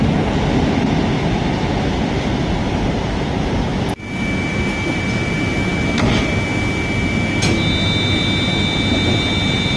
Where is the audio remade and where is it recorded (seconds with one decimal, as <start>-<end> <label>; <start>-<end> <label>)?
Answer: 0.0-2.6 recorded; 2.6-3.8 remade; 3.8-9.8 recorded